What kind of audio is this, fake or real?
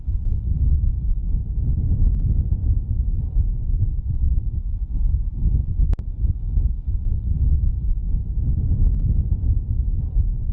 real